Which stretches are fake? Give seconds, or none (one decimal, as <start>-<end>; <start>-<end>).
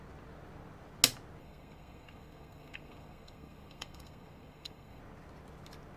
1.4-5.0